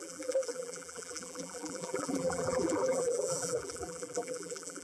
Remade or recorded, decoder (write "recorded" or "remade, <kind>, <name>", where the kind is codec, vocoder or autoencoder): remade, vocoder, BigVGAN v2